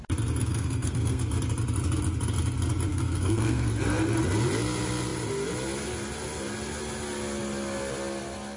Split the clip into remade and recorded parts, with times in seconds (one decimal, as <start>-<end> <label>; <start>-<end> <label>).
0.0-0.4 recorded; 0.4-1.2 remade; 1.2-2.9 recorded; 2.9-3.7 remade; 3.7-8.6 recorded